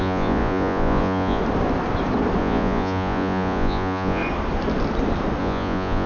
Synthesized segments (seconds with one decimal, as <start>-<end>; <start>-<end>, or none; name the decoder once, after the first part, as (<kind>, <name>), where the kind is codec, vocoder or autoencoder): 0.0-1.4 (vocoder, Vocos); 2.4-4.2; 5.4-6.1